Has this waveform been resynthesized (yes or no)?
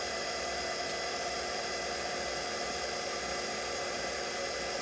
no